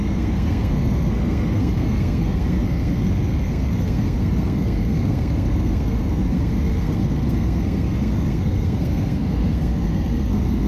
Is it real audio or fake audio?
fake